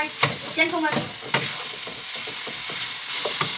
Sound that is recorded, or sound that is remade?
recorded